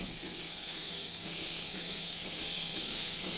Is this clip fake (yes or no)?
yes